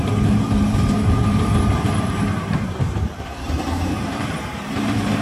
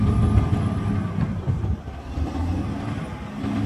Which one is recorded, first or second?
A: second